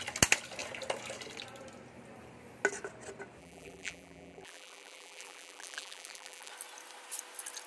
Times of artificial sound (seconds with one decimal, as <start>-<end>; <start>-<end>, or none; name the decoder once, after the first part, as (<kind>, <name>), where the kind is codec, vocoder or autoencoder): 3.4-6.5 (vocoder, BigVGAN v2)